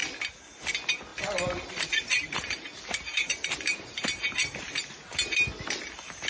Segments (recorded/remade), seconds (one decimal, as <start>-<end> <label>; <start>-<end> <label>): 0.0-1.1 recorded; 1.1-4.9 remade; 4.9-6.3 recorded